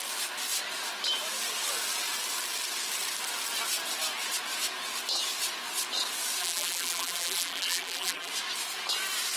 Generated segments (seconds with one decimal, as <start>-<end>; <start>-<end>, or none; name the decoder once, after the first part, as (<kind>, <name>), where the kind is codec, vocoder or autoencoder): 6.4-8.3 (vocoder, BigVGAN v2)